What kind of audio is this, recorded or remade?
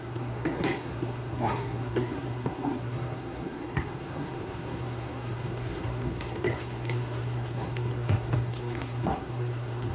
remade